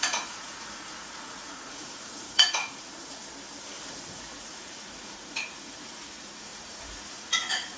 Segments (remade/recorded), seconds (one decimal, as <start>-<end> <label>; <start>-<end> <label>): 0.0-3.2 remade; 3.2-3.9 recorded; 3.9-7.8 remade